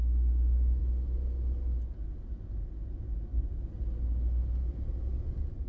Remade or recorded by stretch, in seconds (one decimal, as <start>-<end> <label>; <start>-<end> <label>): 0.0-5.7 recorded